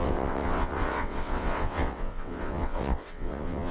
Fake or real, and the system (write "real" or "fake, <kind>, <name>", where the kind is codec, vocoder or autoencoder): fake, vocoder, WaveNeXt